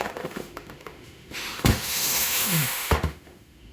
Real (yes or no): no